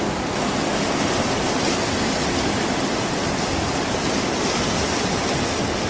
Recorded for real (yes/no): yes